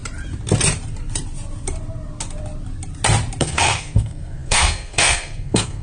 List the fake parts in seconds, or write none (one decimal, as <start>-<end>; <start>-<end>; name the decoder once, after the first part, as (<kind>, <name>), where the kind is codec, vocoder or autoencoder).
3.4-5.8 (codec, SNAC)